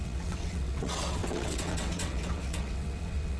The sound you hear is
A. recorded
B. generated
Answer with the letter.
B